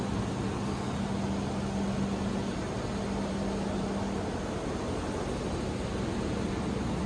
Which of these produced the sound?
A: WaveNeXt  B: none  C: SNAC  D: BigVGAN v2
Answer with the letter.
B